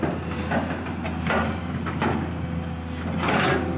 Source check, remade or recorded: recorded